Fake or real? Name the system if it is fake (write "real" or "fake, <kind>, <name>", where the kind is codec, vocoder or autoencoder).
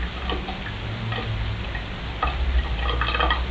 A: real